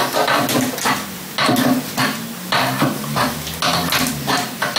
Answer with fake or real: real